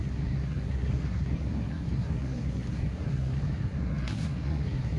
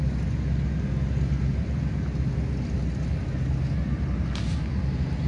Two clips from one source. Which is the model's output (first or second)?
first